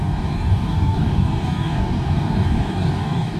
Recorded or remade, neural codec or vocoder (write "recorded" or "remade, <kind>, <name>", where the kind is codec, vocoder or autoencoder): remade, codec, DAC